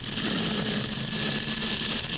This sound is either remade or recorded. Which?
remade